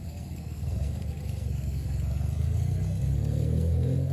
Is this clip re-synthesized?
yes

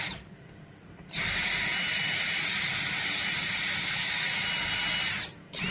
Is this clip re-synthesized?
no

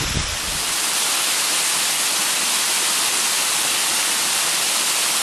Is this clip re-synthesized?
no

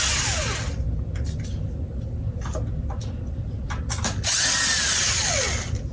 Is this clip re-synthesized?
no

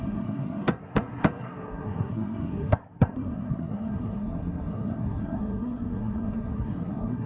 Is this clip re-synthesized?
yes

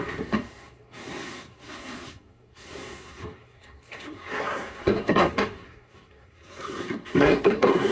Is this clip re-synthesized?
yes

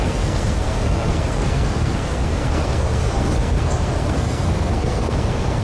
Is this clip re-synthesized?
yes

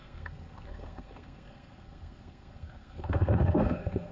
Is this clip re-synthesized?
yes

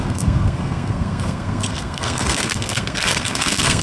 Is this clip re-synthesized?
yes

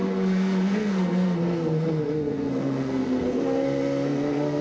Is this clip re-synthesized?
yes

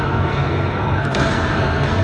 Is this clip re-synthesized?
yes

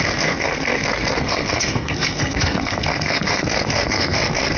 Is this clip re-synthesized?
yes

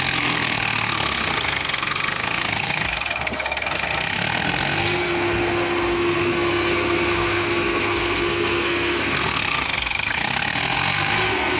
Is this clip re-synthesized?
yes